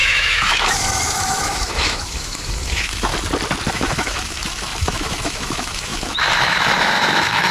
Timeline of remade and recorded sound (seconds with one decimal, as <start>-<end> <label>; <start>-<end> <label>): 0.0-3.1 remade; 3.1-3.7 recorded; 3.7-7.5 remade